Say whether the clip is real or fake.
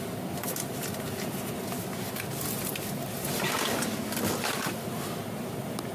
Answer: real